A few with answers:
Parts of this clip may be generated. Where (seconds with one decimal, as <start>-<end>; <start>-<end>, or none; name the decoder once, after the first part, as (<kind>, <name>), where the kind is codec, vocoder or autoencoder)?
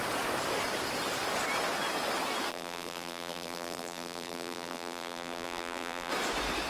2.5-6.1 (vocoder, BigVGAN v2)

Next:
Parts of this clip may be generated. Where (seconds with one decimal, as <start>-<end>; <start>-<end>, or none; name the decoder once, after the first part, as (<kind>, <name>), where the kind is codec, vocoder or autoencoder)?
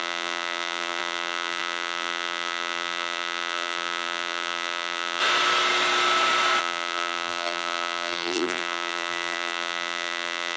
0.0-5.2 (vocoder, BigVGAN v2); 6.6-10.6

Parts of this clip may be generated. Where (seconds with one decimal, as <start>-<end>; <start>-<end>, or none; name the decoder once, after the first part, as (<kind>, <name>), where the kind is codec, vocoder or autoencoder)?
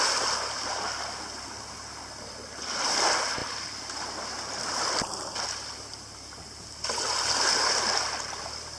none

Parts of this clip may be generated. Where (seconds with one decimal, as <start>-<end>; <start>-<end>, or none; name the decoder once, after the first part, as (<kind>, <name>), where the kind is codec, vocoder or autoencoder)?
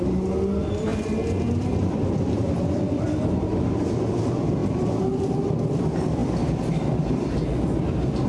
0.9-3.0 (vocoder, BigVGAN v2); 4.6-5.2